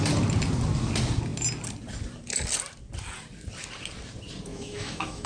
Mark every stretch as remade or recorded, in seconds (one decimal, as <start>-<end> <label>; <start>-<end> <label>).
0.0-4.5 recorded; 4.5-5.3 remade